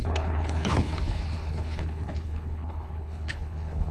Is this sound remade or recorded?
remade